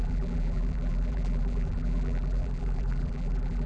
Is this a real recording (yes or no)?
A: no